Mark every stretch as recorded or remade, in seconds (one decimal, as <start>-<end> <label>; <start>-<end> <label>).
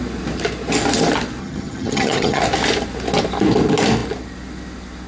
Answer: 0.0-1.4 recorded; 1.4-2.4 remade; 2.4-5.1 recorded